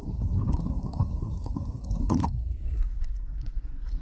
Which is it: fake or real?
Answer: fake